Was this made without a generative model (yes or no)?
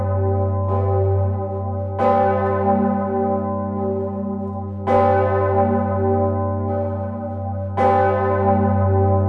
yes